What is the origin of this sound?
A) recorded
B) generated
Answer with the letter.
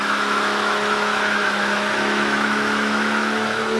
B